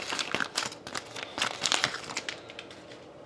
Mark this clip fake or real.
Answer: real